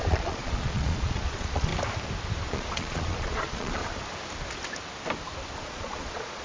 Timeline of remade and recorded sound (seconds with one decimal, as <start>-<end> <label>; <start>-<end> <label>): 0.0-1.7 remade; 1.7-2.5 recorded; 2.5-3.8 remade; 3.8-5.6 recorded; 5.6-6.4 remade